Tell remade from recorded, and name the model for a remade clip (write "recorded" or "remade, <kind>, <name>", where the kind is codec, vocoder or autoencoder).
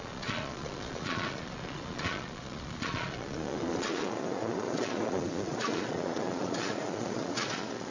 remade, vocoder, Vocos